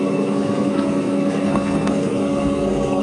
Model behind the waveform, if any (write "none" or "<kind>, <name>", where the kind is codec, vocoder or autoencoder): codec, SNAC